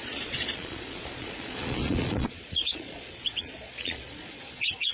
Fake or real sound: fake